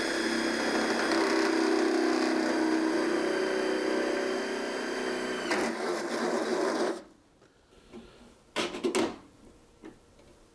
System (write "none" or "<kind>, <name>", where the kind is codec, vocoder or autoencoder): none